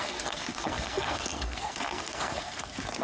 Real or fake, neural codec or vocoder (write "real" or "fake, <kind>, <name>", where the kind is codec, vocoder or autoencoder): fake, codec, SNAC